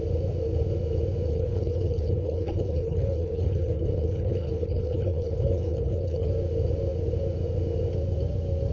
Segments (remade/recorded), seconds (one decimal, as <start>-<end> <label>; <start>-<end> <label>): 0.0-1.3 recorded; 1.3-6.3 remade; 6.3-8.7 recorded

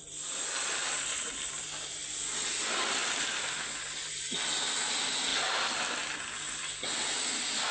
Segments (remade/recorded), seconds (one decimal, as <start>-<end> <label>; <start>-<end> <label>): 0.0-7.7 recorded